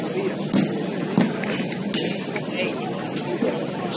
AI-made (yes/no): no